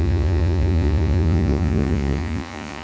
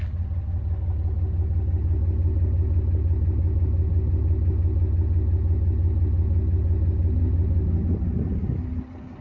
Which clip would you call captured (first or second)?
second